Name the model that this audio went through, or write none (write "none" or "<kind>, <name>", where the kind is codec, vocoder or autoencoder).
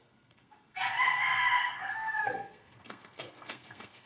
codec, SNAC